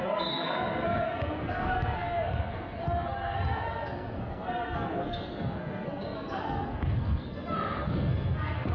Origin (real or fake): fake